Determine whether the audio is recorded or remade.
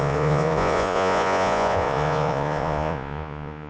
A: remade